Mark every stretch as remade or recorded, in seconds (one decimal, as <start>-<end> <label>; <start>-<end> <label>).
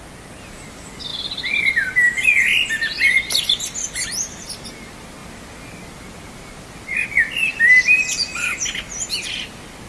0.0-7.5 recorded; 7.5-8.0 remade; 8.0-9.9 recorded